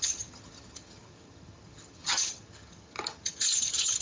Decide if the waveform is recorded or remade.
remade